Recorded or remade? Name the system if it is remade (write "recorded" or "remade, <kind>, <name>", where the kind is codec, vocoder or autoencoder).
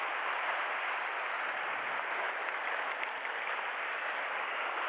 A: recorded